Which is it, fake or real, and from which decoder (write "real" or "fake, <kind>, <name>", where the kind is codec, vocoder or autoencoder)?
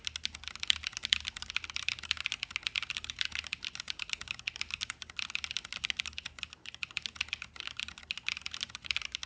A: real